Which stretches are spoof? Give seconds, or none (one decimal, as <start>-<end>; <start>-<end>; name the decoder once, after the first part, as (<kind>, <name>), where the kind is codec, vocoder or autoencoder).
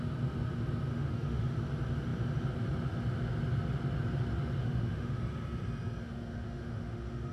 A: 0.9-1.6 (autoencoder, DAC-VAE); 4.6-5.2; 6.0-7.3